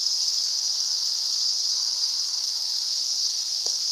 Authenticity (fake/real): fake